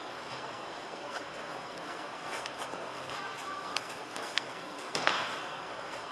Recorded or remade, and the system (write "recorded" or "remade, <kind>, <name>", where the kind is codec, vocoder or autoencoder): remade, codec, SNAC